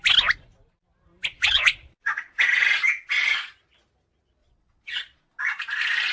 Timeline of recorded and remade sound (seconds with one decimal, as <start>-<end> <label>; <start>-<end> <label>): 0.0-1.3 recorded; 1.3-3.5 remade; 3.5-4.4 recorded; 4.4-5.4 remade; 5.4-6.1 recorded